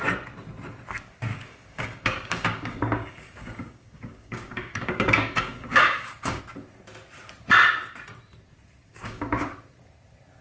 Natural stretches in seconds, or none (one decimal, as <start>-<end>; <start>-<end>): 0.0-1.3; 6.4-8.8; 9.5-10.4